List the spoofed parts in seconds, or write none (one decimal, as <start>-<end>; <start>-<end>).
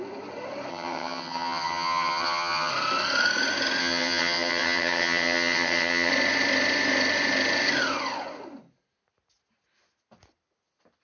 0.7-2.7; 3.8-6.1